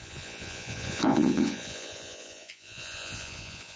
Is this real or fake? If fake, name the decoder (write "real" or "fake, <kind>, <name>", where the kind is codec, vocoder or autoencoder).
fake, vocoder, Vocos